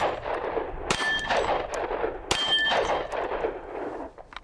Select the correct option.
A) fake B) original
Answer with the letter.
B